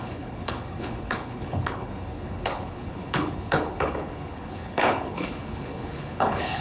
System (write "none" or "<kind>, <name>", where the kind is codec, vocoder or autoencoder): codec, HILCodec